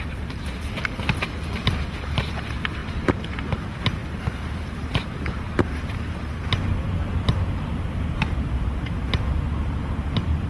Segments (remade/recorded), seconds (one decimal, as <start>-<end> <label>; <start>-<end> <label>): 0.0-2.8 recorded; 2.8-3.3 remade; 3.3-4.0 recorded; 4.0-6.2 remade; 6.2-7.7 recorded; 7.7-8.5 remade; 8.5-10.5 recorded

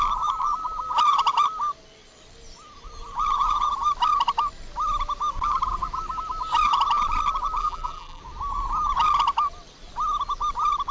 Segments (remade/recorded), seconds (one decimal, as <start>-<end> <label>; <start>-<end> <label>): 0.0-7.6 recorded; 7.6-8.2 remade; 8.2-10.9 recorded

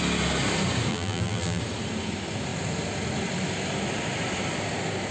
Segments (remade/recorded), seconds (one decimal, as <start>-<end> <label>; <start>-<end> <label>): 0.0-0.9 recorded; 0.9-1.6 remade; 1.6-5.1 recorded